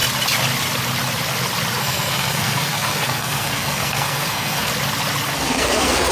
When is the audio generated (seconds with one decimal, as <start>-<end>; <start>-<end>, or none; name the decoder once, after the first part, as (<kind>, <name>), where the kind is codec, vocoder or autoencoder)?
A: 1.8-4.7 (codec, SNAC); 5.4-6.1